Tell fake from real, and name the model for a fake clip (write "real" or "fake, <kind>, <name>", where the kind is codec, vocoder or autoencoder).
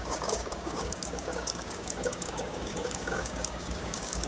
fake, codec, DAC